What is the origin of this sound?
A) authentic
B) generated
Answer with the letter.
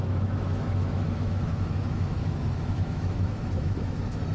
B